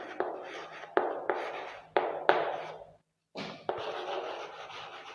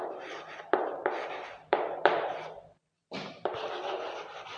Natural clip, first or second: first